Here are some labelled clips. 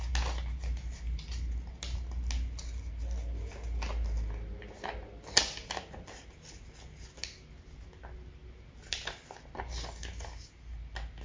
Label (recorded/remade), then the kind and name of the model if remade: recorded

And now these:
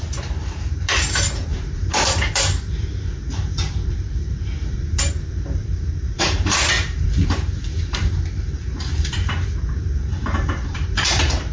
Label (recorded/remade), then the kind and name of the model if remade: remade, vocoder, BigVGAN v2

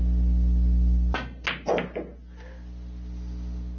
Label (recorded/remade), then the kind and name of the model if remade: recorded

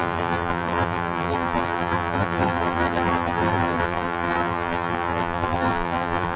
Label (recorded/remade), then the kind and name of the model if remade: remade, vocoder, BigVGAN v2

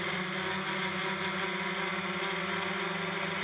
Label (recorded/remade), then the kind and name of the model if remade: recorded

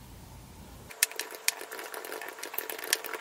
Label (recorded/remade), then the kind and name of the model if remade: recorded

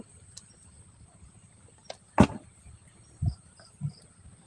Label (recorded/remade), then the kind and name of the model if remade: recorded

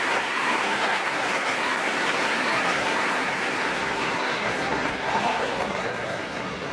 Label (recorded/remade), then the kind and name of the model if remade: remade, codec, SNAC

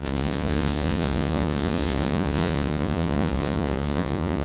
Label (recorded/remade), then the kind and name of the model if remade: remade, vocoder, Vocos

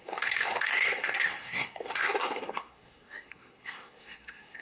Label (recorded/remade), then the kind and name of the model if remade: remade, codec, SNAC